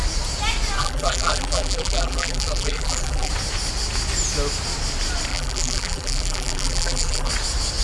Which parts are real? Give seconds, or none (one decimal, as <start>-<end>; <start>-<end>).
0.0-0.8; 3.3-5.3; 7.3-7.8